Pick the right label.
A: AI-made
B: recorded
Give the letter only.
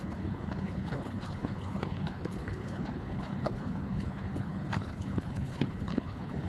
A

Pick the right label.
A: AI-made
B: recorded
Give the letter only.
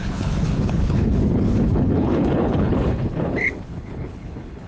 A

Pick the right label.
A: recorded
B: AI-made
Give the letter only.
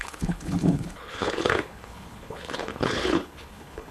B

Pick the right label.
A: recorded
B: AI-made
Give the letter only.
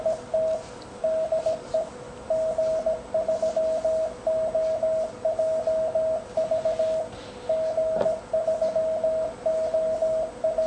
A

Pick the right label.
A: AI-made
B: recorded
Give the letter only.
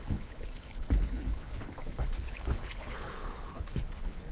A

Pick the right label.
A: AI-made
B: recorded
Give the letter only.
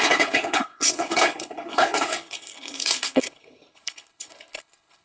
A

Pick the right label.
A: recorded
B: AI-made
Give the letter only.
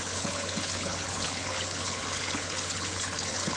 B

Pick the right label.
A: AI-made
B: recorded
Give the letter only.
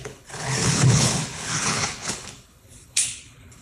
A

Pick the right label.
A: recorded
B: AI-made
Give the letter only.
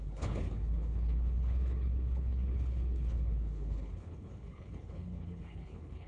B